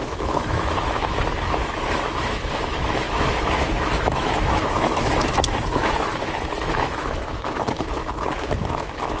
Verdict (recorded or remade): remade